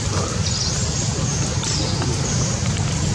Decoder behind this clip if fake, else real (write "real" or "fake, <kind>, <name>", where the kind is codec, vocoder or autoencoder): real